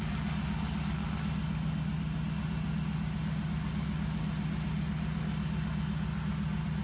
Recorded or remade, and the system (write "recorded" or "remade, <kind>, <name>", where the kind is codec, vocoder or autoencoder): recorded